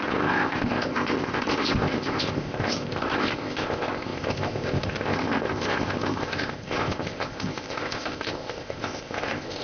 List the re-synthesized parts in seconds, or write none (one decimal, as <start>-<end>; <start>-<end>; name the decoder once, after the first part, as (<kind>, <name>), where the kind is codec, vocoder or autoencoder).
0.0-9.6 (codec, ZipCodec)